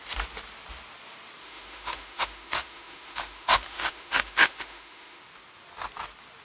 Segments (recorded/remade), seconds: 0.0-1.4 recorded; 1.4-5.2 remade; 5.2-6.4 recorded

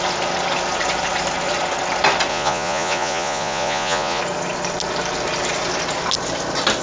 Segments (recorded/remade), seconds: 0.0-2.3 recorded; 2.3-4.2 remade; 4.2-6.8 recorded

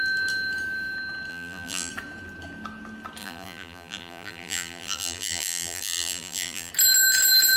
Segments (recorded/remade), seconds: 0.0-1.3 recorded; 1.3-1.9 remade; 1.9-3.2 recorded; 3.2-6.7 remade; 6.7-7.6 recorded